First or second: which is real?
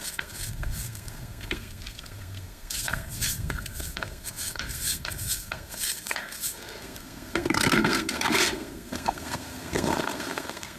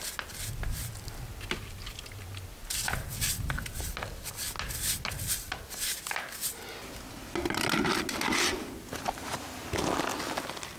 second